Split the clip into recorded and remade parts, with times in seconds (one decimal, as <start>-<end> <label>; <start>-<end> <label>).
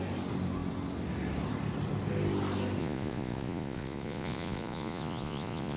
0.0-2.8 recorded; 2.8-5.8 remade